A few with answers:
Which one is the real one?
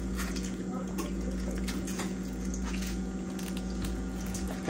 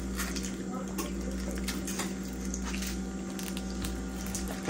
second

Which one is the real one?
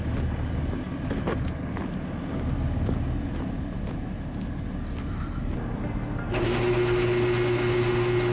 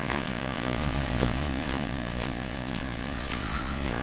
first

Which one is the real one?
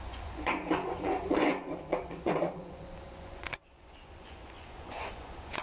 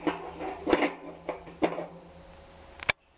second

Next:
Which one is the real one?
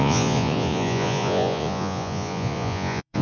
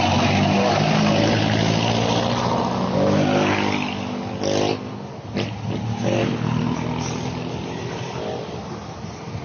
second